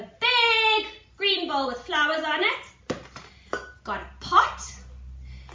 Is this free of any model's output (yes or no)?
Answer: yes